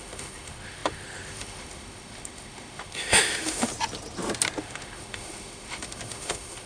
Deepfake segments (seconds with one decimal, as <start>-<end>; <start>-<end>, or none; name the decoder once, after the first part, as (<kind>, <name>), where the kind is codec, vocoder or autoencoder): 0.0-3.7 (autoencoder, DAC-VAE); 4.6-6.7

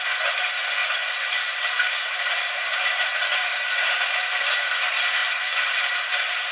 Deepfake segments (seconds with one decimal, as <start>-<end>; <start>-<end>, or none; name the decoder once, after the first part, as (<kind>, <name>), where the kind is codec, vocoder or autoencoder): 0.8-4.2 (vocoder, BigVGAN v2); 5.2-5.9

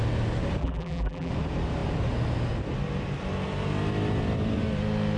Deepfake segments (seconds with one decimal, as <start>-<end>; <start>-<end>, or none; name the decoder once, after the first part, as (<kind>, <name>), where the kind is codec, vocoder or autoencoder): 0.6-1.3 (vocoder, BigVGAN v2)

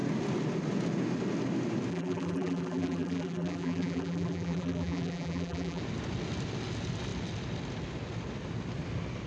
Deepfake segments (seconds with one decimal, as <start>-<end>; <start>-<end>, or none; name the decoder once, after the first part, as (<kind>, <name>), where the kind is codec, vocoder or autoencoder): 1.9-5.8 (vocoder, BigVGAN v2)